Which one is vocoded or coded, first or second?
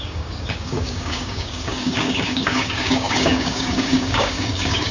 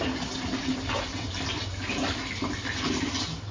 first